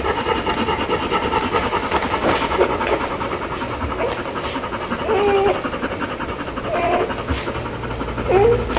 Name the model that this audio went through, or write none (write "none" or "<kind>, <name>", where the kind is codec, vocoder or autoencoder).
none